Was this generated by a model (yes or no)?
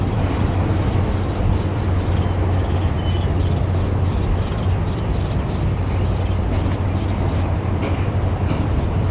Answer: no